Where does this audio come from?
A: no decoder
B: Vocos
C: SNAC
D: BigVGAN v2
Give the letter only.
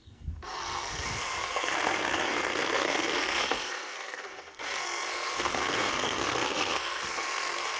C